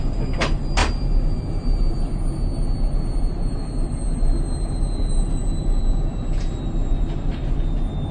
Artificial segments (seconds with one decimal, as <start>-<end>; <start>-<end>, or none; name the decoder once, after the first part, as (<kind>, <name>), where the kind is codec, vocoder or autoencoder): none